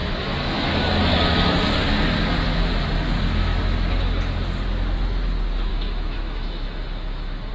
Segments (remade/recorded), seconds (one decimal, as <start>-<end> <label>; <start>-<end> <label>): 0.0-1.0 remade; 1.0-5.7 recorded; 5.7-7.5 remade